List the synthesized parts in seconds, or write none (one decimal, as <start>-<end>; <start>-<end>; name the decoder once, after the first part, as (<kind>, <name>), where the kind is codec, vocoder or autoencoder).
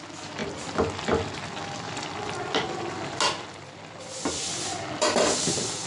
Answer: none